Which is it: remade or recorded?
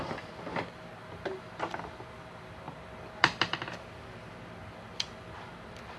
remade